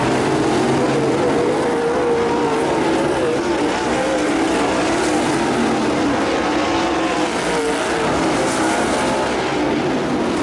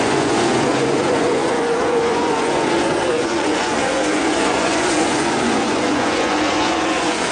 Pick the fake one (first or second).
second